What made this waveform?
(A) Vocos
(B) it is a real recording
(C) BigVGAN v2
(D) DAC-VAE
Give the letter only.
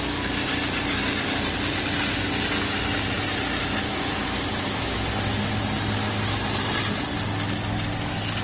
B